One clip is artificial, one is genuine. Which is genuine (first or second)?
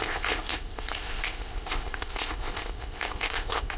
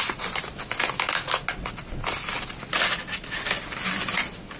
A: second